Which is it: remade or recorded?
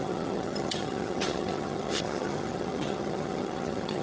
remade